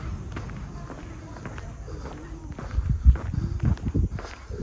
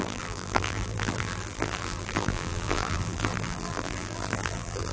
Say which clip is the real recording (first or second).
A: first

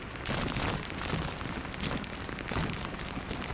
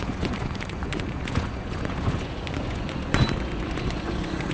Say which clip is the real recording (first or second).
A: first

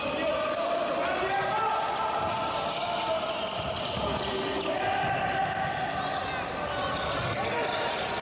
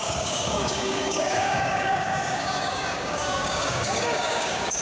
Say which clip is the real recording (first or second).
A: first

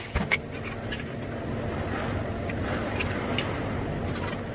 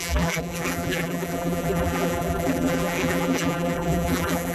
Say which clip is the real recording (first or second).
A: first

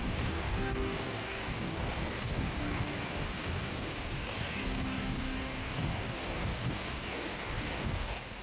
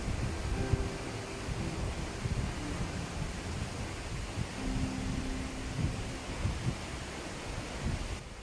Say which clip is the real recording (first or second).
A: second